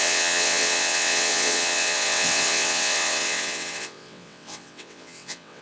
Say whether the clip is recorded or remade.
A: remade